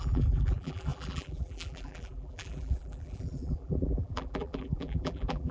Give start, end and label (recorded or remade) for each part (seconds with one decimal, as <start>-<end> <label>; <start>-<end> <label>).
0.0-5.5 remade